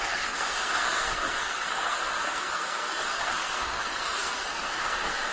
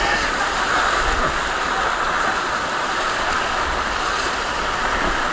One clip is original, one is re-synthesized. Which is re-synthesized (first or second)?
first